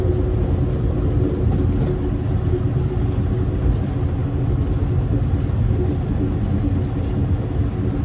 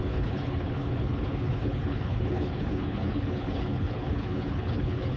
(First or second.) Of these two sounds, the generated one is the second